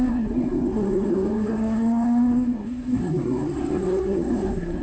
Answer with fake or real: fake